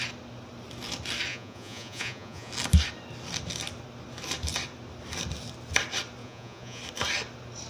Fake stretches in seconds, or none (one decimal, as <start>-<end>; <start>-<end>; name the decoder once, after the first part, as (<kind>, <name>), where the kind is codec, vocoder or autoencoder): 1.3-2.5 (vocoder, Vocos); 6.2-6.8